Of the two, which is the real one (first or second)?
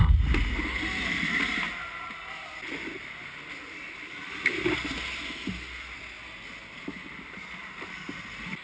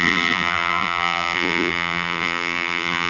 first